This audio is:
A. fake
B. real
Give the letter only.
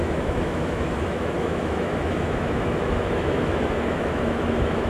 A